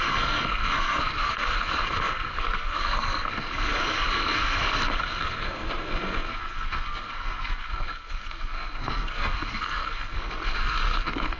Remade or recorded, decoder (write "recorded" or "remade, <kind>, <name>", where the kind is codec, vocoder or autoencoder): remade, codec, SNAC